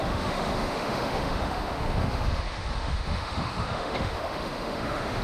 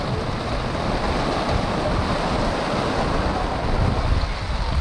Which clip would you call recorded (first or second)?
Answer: second